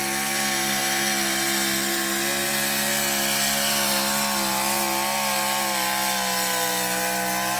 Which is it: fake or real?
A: real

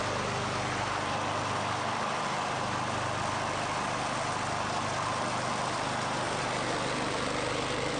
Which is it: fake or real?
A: real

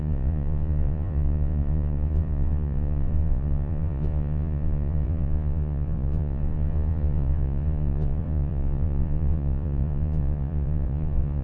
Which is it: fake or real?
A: fake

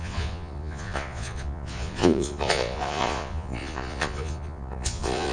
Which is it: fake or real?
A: fake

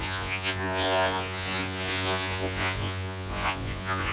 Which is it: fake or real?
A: fake